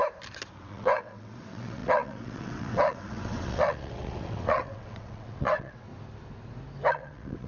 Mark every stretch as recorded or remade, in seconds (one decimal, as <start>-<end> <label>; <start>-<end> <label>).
0.0-0.6 recorded; 0.6-5.9 remade; 5.9-6.9 recorded; 6.9-7.5 remade